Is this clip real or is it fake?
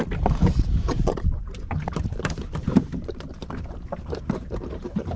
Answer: fake